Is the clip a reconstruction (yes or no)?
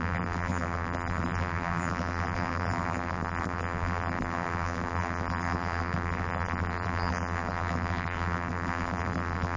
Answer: yes